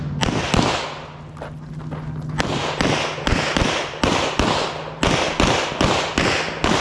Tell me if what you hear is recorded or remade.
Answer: recorded